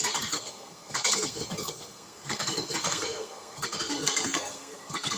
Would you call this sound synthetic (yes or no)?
yes